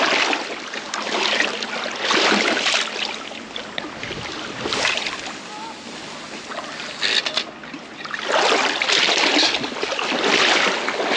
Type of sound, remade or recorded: recorded